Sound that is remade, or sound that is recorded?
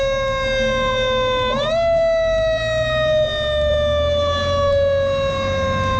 recorded